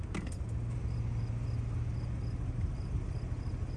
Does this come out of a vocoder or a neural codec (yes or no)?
no